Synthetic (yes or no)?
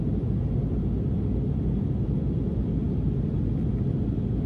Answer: no